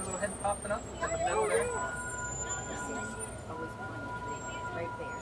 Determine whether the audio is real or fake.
real